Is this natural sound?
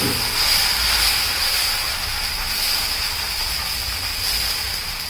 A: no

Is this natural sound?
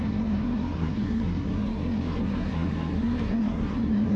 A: no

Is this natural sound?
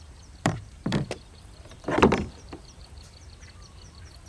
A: no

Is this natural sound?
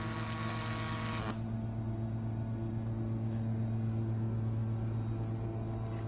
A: yes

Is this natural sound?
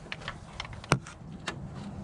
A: yes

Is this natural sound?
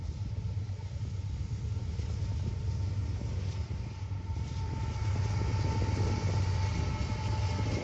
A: yes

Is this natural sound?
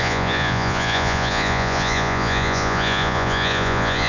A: no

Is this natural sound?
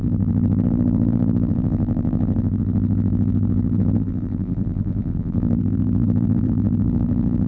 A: no